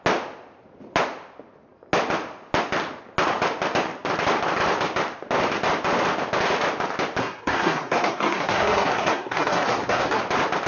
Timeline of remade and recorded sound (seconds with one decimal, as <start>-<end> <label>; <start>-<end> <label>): 0.0-7.2 recorded; 7.2-10.2 remade; 10.2-10.7 recorded